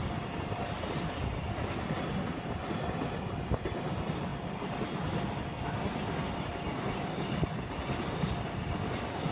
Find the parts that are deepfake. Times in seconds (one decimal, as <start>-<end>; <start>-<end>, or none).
none